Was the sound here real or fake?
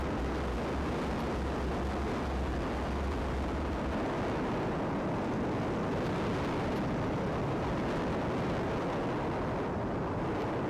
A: real